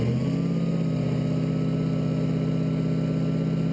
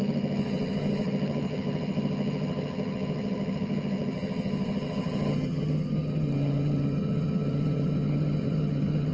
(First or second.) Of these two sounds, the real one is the first